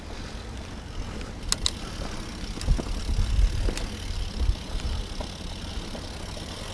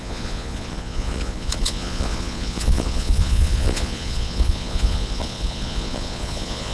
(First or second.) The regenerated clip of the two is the second